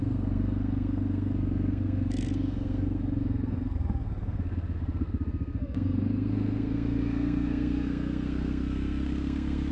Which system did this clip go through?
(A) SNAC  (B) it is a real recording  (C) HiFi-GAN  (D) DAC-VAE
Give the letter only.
A